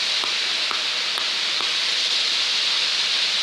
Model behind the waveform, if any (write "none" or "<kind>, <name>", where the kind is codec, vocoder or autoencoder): none